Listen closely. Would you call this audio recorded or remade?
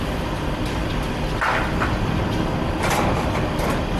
recorded